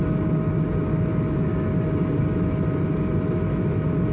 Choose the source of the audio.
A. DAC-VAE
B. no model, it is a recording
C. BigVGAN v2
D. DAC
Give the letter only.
B